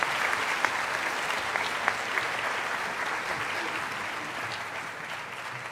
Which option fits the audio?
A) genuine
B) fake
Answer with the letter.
A